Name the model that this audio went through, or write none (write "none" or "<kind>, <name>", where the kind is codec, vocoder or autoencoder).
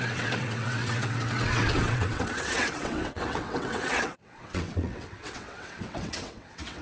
vocoder, WaveNeXt